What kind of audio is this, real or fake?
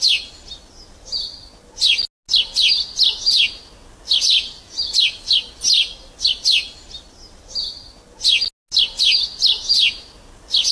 real